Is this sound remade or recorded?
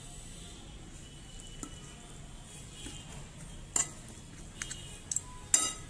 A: recorded